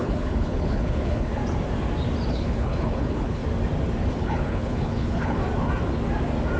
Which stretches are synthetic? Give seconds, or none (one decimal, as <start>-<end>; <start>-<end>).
0.0-1.4; 2.3-3.4; 4.1-5.4